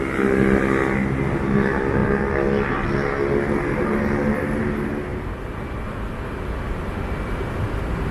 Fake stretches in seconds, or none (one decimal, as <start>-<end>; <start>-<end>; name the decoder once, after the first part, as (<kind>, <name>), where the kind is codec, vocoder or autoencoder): none